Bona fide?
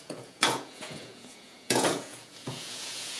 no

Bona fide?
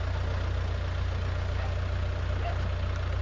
yes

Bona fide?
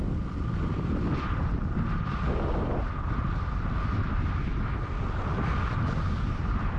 yes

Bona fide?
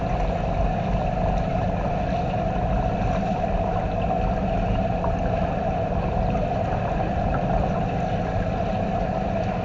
yes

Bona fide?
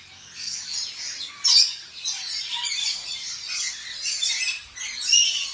yes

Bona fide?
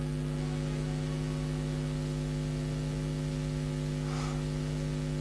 yes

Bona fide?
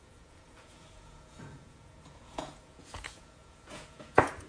no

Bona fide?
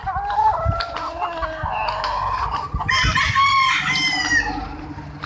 yes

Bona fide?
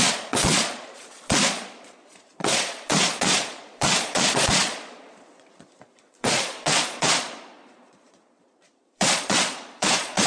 no